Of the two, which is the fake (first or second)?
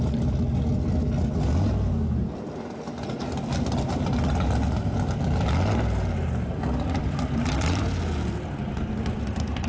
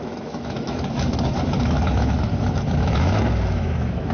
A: second